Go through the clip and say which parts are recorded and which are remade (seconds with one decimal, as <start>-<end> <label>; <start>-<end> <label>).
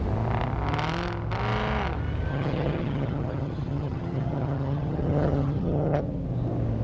0.0-2.3 recorded; 2.3-6.0 remade; 6.0-6.8 recorded